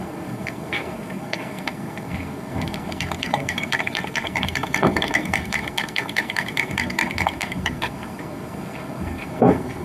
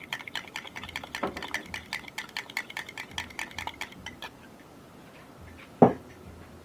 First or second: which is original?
second